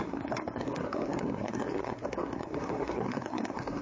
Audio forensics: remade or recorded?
remade